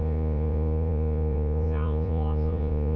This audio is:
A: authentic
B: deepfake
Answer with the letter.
B